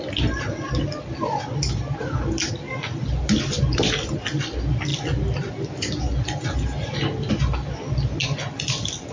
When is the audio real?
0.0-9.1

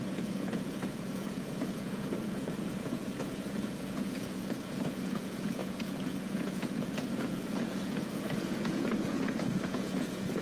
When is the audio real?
none